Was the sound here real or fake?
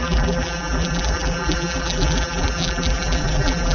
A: fake